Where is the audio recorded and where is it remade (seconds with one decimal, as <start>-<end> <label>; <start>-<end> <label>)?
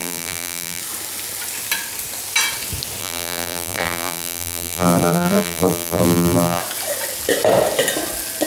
0.0-0.8 remade; 0.8-3.0 recorded; 3.0-6.6 remade; 6.6-8.5 recorded